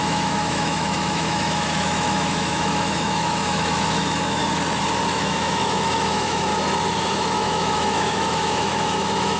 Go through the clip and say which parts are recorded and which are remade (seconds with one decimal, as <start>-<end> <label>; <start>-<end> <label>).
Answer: 0.0-4.4 remade; 4.4-5.1 recorded; 5.1-6.5 remade; 6.5-7.1 recorded; 7.1-9.4 remade